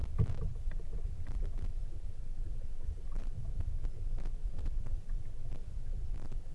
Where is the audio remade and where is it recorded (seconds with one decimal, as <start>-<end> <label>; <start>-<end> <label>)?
0.0-6.5 remade